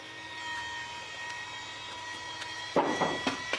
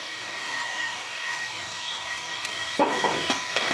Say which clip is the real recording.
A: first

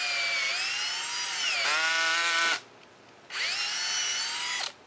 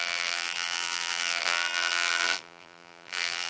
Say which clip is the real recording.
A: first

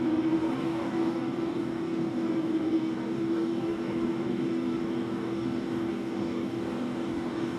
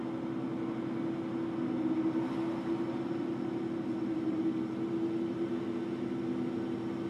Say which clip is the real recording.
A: second